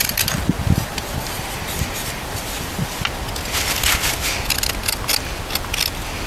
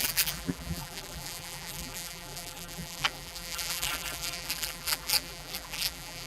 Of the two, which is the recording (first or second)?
first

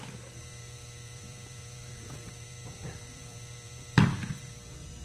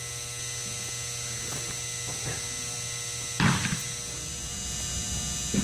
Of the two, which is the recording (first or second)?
second